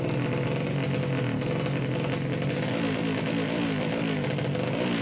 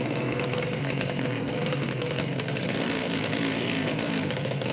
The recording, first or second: first